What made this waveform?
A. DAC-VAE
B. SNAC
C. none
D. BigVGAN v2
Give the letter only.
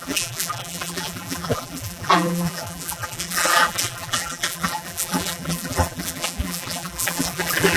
D